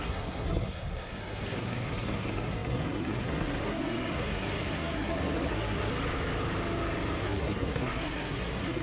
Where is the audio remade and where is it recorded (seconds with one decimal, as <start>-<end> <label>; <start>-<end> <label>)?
0.0-5.9 remade; 5.9-7.2 recorded; 7.2-8.8 remade